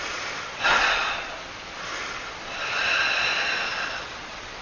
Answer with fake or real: fake